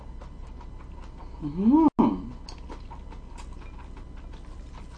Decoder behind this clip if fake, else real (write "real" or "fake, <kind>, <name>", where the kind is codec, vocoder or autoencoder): real